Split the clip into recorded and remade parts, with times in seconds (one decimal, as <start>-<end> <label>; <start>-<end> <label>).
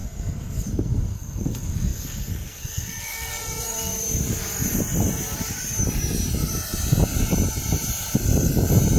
0.0-3.9 remade; 3.9-9.0 recorded